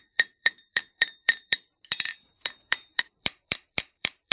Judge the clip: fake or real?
fake